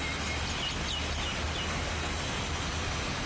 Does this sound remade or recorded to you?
recorded